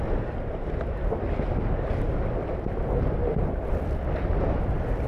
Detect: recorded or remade recorded